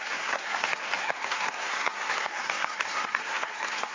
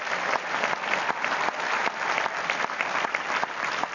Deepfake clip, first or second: first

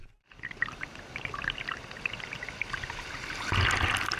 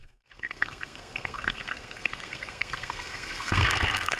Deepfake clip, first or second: second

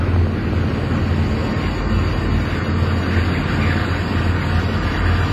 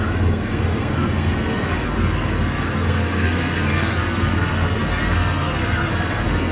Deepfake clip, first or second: second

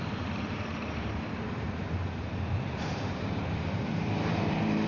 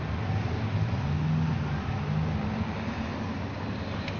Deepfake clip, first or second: first